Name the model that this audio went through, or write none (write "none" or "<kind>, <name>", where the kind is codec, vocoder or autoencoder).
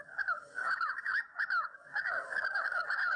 codec, DAC